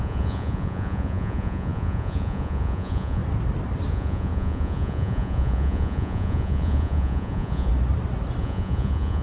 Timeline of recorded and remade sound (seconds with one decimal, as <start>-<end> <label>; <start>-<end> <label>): 0.0-3.2 remade; 3.2-3.9 recorded; 3.9-7.7 remade; 7.7-8.4 recorded; 8.4-9.2 remade